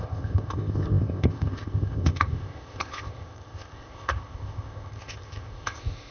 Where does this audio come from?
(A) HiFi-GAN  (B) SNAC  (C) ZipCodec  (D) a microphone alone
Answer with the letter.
C